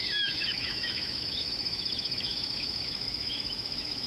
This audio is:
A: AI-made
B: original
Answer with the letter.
A